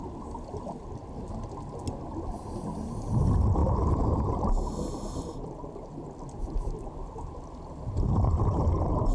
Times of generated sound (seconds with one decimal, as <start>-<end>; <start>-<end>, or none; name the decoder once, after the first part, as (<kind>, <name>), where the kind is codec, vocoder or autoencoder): none